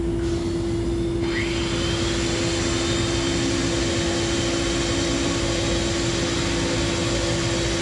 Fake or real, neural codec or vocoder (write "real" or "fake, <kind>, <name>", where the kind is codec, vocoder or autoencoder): real